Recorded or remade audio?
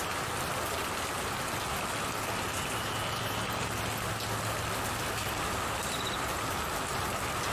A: recorded